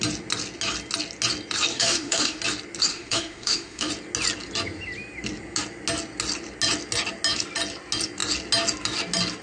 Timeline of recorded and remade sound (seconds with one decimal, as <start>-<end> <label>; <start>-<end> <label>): 0.0-1.7 recorded; 1.7-2.4 remade; 2.4-2.9 recorded; 2.9-3.9 remade; 3.9-9.4 recorded